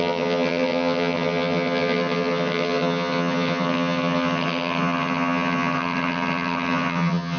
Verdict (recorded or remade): remade